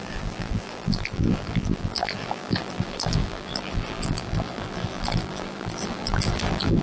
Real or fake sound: fake